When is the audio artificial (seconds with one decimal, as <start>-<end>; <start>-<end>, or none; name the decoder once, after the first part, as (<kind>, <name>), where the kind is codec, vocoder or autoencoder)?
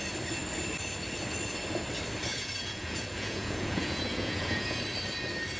2.3-4.8 (vocoder, Vocos)